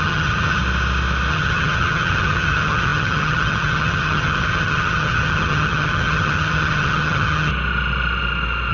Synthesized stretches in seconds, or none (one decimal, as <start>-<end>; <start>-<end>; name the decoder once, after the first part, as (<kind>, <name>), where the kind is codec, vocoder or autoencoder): 0.0-0.6 (vocoder, HiFi-GAN); 1.3-7.5